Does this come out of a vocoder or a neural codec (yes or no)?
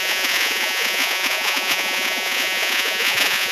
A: yes